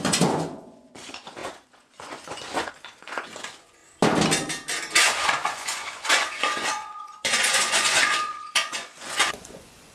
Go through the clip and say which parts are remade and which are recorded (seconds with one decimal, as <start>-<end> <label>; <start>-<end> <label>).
0.0-3.8 remade; 3.8-5.0 recorded; 5.0-9.9 remade